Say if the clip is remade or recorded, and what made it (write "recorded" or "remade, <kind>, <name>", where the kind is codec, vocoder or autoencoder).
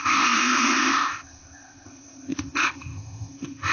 remade, codec, ZipCodec